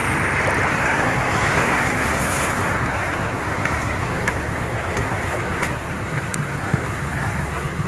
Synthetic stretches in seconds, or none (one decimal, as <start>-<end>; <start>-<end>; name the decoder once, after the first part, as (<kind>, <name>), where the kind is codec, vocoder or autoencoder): 0.7-7.9 (codec, SNAC)